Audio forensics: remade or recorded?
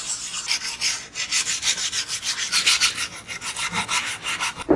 recorded